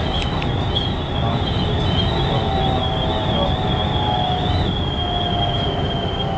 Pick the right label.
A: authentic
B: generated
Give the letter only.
A